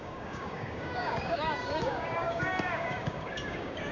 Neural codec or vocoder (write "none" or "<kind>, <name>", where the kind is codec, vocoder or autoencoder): codec, DAC